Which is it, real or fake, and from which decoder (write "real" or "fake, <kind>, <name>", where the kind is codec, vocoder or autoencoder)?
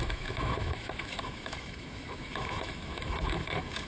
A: fake, autoencoder, DAC-VAE